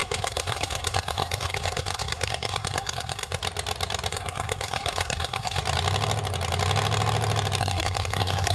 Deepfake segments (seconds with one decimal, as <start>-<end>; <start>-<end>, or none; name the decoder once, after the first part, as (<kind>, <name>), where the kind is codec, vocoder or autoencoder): 0.0-3.4 (codec, SNAC); 4.1-5.6; 7.6-8.5